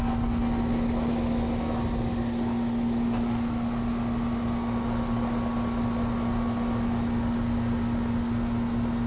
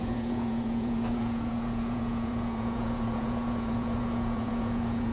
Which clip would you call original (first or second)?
first